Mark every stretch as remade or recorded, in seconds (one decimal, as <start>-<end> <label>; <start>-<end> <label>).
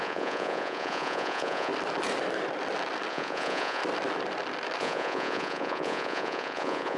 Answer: 0.0-1.7 remade; 1.7-3.1 recorded; 3.1-3.8 remade; 3.8-4.8 recorded; 4.8-7.0 remade